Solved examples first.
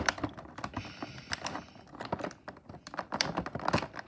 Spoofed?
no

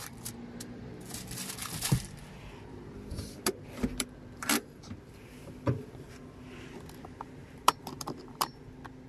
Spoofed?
yes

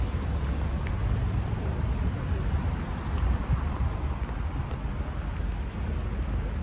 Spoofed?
no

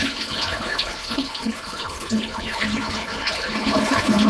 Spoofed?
yes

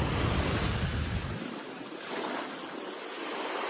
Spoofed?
no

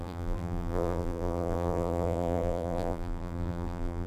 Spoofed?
yes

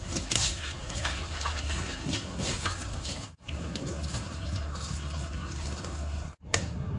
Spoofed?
yes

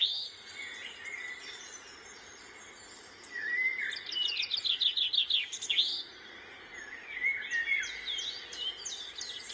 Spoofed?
no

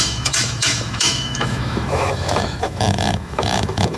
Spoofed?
yes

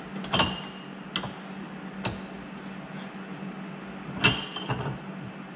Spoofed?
no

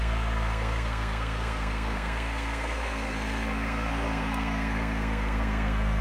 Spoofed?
yes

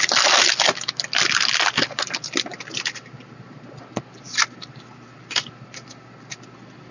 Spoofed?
no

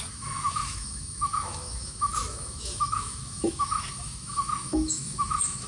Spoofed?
yes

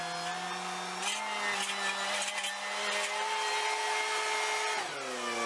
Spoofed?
no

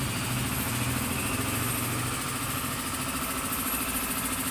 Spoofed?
no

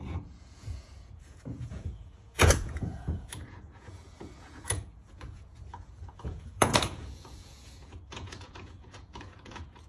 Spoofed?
yes